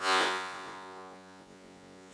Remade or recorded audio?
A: remade